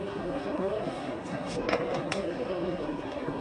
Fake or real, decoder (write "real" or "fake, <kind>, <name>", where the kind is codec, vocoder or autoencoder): fake, codec, SNAC